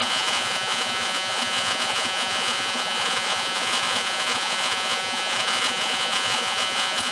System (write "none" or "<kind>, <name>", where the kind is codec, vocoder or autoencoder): vocoder, Vocos